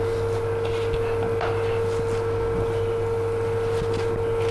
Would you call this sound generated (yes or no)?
no